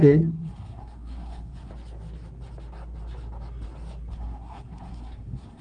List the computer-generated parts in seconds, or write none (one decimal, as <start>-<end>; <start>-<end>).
0.0-1.7; 4.1-5.6